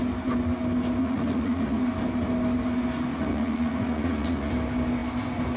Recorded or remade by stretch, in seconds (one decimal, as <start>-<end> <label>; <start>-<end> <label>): 0.0-1.0 recorded; 1.0-1.8 remade; 1.8-3.1 recorded; 3.1-4.5 remade; 4.5-5.6 recorded